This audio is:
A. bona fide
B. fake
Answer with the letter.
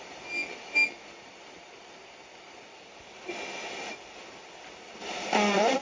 A